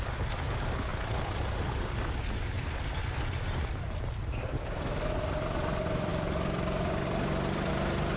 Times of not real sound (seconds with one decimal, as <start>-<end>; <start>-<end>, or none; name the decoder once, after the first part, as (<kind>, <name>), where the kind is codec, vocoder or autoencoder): 6.1-7.7 (vocoder, BigVGAN v2)